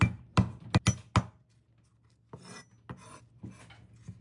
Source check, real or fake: real